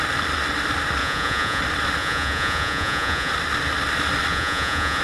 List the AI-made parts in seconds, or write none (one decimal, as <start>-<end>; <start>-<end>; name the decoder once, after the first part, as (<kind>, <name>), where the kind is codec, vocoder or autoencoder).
1.0-1.6 (vocoder, Vocos); 2.0-3.3; 4.3-5.0